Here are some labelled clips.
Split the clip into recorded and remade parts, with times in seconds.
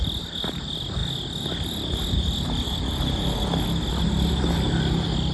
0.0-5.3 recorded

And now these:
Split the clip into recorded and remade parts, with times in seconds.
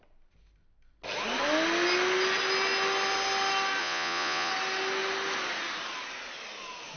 0.0-3.8 recorded; 3.8-4.5 remade; 4.5-7.0 recorded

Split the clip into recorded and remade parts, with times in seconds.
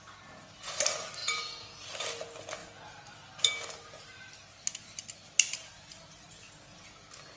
0.0-1.2 recorded; 1.2-1.9 remade; 1.9-7.4 recorded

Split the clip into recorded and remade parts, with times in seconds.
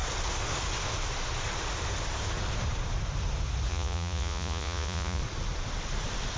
0.0-3.7 recorded; 3.7-5.2 remade; 5.2-6.4 recorded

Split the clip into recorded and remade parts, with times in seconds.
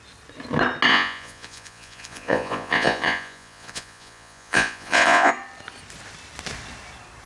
0.0-0.9 recorded; 0.9-5.3 remade; 5.3-7.3 recorded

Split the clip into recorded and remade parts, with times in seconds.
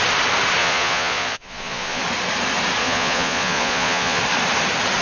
0.0-0.6 recorded; 0.6-2.0 remade; 2.0-2.8 recorded; 2.8-4.2 remade; 4.2-5.0 recorded